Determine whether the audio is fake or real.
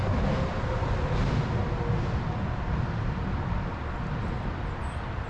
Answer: real